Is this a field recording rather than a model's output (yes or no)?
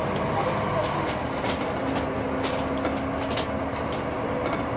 yes